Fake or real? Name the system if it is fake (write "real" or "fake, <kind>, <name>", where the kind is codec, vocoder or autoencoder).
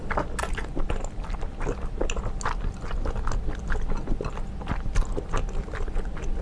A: real